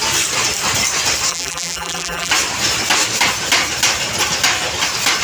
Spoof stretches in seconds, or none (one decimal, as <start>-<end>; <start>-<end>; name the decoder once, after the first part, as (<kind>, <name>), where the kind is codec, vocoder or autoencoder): 1.3-2.3 (vocoder, BigVGAN v2)